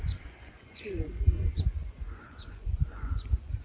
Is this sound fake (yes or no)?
yes